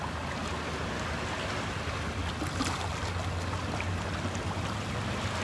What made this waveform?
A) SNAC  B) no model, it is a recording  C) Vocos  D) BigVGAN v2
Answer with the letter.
B